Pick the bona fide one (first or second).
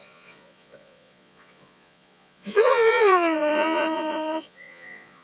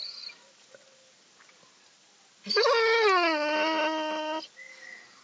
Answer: second